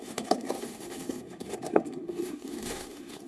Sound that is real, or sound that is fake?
fake